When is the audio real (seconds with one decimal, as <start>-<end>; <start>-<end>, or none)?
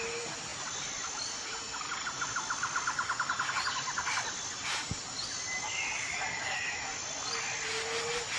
0.0-8.4